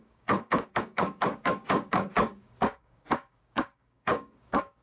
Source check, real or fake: fake